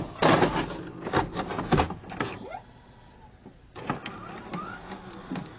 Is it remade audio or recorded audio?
recorded